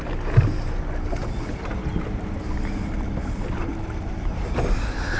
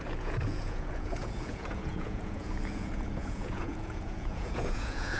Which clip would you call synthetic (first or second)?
second